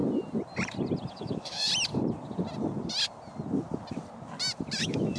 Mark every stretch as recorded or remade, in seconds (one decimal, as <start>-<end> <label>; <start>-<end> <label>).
0.0-1.1 recorded; 1.1-1.7 remade; 1.7-4.8 recorded; 4.8-5.2 remade